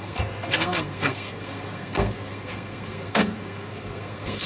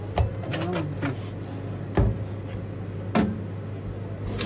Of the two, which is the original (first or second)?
second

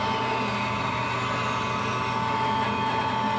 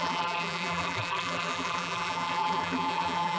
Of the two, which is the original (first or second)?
first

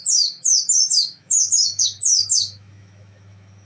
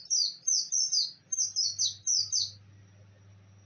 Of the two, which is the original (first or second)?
second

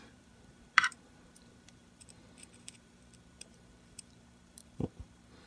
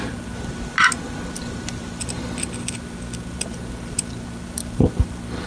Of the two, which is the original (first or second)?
second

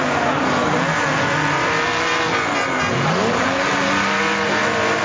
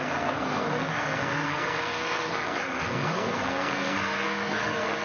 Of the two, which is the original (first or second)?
first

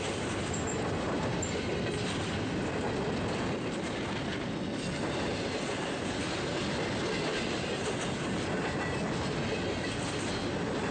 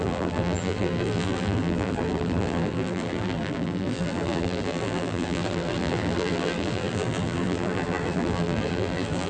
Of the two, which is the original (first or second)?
first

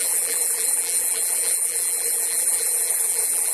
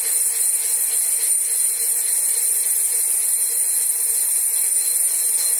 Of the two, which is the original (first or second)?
second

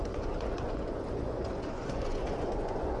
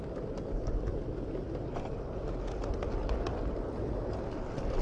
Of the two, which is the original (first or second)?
second